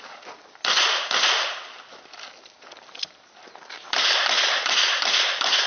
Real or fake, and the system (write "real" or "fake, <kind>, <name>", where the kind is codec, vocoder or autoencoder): real